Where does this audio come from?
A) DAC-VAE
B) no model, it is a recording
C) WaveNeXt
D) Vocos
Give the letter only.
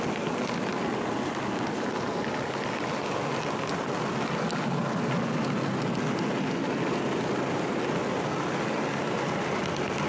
B